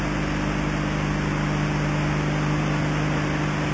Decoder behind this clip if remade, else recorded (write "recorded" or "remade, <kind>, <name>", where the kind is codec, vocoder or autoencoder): recorded